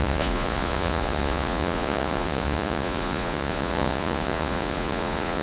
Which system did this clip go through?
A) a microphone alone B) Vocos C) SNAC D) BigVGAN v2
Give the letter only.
B